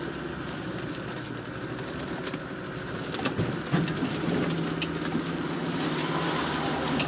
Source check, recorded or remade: recorded